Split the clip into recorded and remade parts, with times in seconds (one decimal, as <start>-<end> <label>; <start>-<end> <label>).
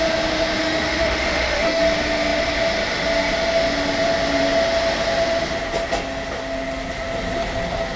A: 0.0-0.6 recorded; 0.6-1.8 remade; 1.8-8.0 recorded